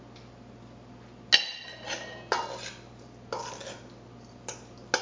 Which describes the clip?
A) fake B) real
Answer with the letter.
B